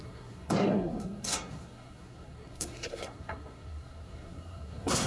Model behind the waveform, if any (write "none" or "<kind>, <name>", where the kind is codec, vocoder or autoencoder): codec, SNAC